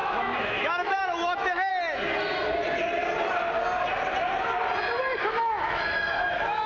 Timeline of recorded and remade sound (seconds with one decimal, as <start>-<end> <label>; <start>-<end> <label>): 0.0-1.7 remade; 1.7-5.2 recorded; 5.2-6.7 remade